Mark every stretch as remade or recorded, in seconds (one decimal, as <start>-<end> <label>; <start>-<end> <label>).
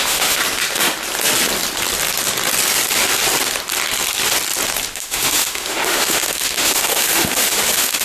0.0-0.4 remade; 0.4-4.9 recorded; 4.9-8.0 remade